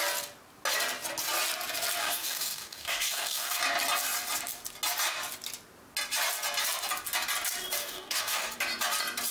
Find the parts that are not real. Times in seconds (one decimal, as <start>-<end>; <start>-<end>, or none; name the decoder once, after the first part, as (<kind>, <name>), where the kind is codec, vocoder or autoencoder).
2.0-3.6 (codec, DAC); 7.8-8.5